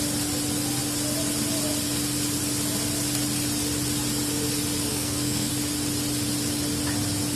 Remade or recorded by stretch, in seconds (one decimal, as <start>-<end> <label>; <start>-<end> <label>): 0.0-4.9 recorded; 4.9-5.5 remade; 5.5-7.4 recorded